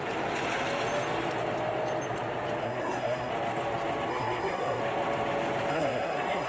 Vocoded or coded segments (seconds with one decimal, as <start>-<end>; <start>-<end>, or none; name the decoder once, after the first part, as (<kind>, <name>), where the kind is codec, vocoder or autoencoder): 2.6-3.3 (codec, SNAC); 4.1-4.8; 5.7-6.5